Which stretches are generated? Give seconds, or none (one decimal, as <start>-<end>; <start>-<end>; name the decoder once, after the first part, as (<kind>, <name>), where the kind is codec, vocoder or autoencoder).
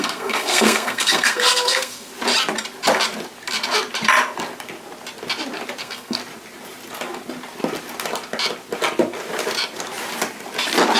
0.0-2.1 (codec, SNAC); 5.8-6.2